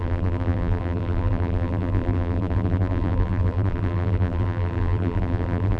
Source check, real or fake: fake